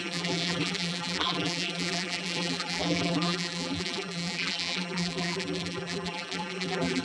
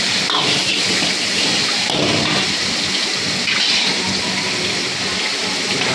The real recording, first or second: second